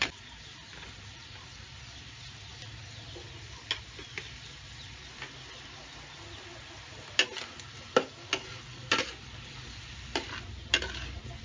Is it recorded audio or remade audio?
recorded